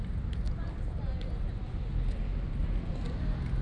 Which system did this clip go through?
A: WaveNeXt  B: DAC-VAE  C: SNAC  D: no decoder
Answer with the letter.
D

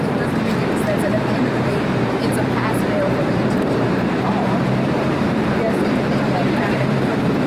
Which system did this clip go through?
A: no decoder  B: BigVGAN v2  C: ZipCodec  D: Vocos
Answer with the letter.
B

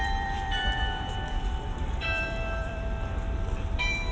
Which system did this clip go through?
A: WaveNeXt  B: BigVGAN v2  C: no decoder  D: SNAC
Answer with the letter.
B